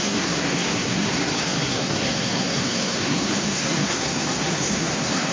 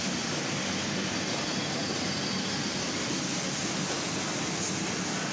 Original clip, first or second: second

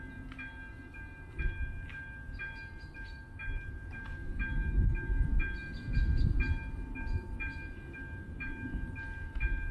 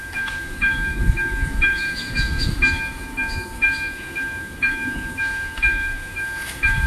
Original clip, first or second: first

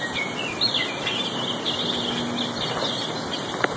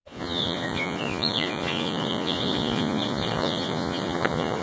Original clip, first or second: first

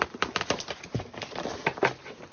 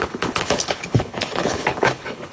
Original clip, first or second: first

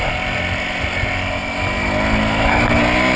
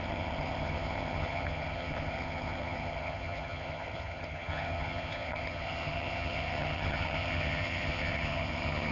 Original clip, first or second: first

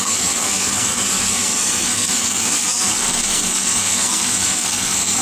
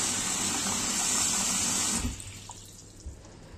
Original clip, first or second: second